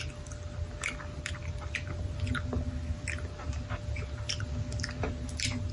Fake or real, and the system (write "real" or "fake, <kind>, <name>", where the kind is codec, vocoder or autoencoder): real